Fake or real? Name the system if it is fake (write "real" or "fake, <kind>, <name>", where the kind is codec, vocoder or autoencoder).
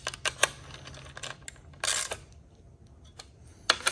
real